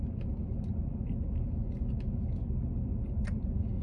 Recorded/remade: recorded